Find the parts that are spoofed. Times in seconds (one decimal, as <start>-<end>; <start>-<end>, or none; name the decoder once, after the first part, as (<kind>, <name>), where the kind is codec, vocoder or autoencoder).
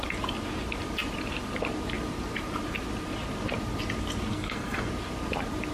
4.3-4.9 (codec, SNAC)